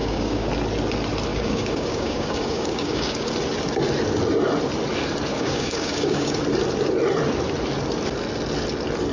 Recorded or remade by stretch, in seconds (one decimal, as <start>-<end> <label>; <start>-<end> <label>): 0.0-0.5 remade; 0.5-1.3 recorded; 1.3-3.3 remade; 3.3-5.3 recorded; 5.3-6.4 remade; 6.4-9.1 recorded